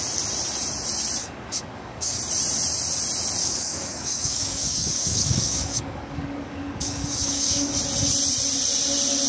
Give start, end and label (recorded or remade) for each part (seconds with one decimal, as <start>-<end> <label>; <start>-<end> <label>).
0.0-1.2 recorded; 1.2-2.2 remade; 2.2-3.4 recorded; 3.4-7.7 remade; 7.7-9.3 recorded